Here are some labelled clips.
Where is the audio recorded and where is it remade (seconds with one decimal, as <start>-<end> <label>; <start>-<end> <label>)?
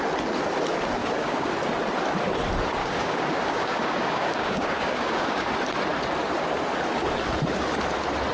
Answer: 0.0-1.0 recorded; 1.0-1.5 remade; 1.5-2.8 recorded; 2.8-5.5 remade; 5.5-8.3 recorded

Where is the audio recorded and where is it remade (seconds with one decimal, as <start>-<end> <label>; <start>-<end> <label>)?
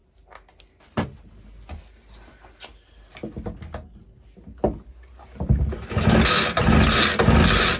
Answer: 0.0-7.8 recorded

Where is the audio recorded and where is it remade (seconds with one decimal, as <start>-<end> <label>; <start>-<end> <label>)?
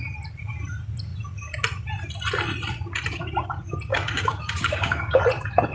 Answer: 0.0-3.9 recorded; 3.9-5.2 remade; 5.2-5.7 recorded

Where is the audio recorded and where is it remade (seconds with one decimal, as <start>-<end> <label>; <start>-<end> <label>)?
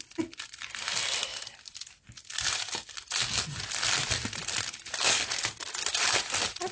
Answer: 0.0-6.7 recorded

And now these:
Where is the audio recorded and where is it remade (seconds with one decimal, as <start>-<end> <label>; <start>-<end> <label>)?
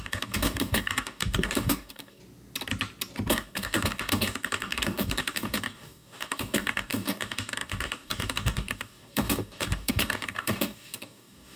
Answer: 0.0-2.2 remade; 2.2-3.3 recorded; 3.3-11.6 remade